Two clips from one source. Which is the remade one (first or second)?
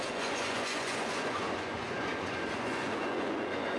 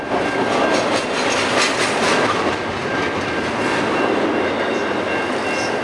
first